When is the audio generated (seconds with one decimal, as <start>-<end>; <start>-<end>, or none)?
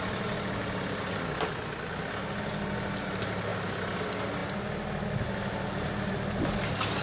none